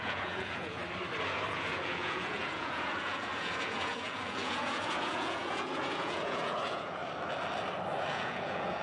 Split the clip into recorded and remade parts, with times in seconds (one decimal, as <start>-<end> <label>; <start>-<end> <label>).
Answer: 0.0-0.8 remade; 0.8-1.5 recorded; 1.5-7.0 remade; 7.0-8.0 recorded; 8.0-8.8 remade